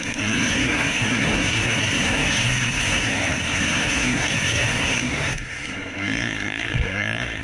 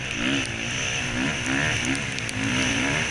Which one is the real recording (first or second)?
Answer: second